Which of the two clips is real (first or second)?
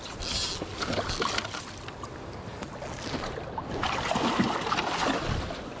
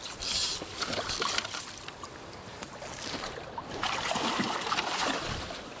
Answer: first